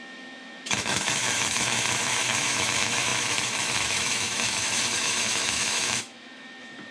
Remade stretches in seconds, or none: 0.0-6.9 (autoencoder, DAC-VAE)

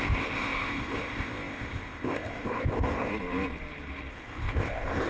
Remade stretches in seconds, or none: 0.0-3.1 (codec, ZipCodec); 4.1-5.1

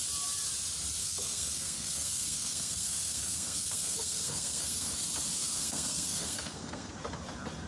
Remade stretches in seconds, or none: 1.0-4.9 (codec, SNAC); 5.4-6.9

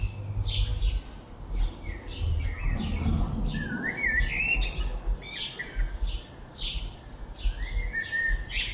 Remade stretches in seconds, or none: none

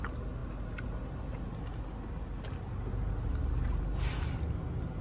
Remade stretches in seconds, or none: none

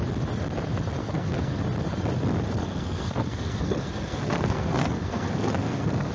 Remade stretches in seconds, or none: 1.0-1.6 (codec, SNAC); 2.6-6.1

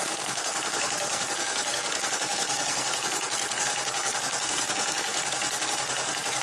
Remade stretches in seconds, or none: 0.0-6.4 (codec, SNAC)